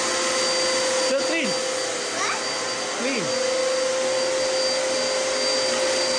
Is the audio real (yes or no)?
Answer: yes